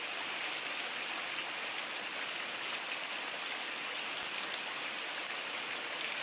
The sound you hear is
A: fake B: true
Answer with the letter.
B